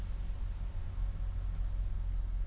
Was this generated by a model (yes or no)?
no